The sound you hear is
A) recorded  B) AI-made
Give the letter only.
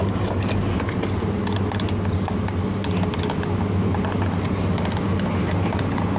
A